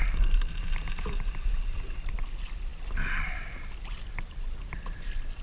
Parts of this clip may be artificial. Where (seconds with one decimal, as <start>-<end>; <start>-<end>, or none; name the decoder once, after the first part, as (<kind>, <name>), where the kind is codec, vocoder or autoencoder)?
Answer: 0.0-5.4 (vocoder, BigVGAN v2)